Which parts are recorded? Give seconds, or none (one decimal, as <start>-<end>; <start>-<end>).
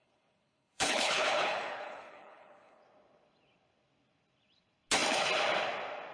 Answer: 2.8-6.1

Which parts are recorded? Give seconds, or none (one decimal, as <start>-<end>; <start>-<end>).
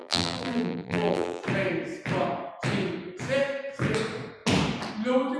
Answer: 1.4-5.4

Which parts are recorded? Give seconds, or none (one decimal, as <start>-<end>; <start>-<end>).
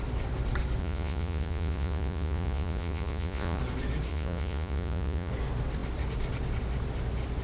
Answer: 0.0-0.8; 3.6-4.1; 5.3-7.4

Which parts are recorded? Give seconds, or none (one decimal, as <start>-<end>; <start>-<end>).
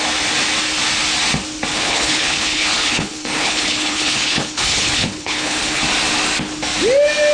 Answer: 0.0-1.7; 5.8-7.3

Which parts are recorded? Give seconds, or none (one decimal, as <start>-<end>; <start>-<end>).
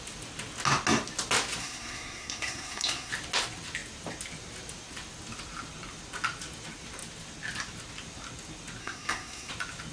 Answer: 0.0-1.6; 3.1-8.8; 9.5-9.9